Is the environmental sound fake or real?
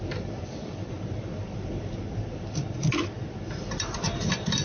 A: fake